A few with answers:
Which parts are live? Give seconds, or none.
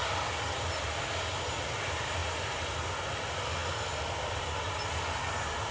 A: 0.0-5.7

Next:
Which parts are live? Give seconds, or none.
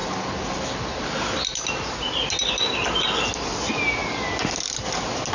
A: 0.0-5.3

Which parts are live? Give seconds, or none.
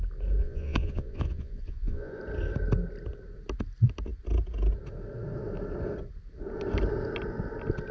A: 0.0-0.4; 2.2-7.9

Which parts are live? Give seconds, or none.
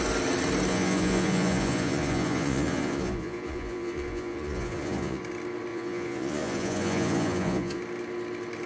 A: 0.0-0.7; 5.2-5.7; 7.8-8.7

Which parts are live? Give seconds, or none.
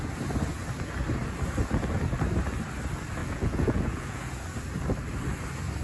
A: 0.0-3.2; 4.3-5.8